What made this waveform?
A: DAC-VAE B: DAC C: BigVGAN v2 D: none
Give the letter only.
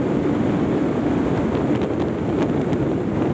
D